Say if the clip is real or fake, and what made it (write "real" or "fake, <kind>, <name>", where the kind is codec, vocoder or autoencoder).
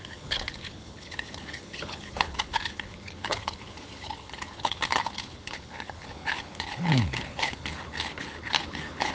fake, codec, HILCodec